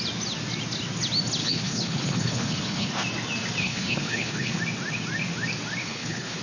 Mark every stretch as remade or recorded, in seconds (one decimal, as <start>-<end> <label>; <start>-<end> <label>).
0.0-1.4 recorded; 1.4-2.9 remade; 2.9-3.6 recorded; 3.6-4.6 remade; 4.6-5.8 recorded; 5.8-6.4 remade